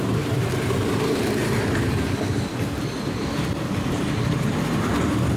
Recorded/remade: remade